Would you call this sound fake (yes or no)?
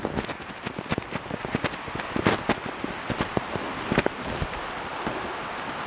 no